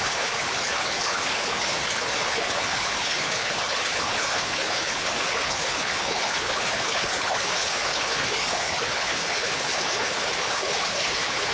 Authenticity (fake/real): fake